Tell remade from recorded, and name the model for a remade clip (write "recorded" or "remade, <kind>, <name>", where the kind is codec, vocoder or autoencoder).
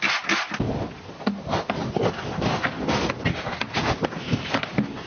recorded